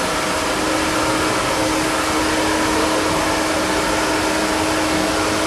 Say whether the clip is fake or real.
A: real